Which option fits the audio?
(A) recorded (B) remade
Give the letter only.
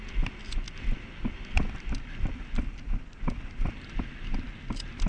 A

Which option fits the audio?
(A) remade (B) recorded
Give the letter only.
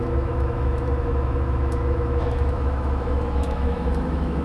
A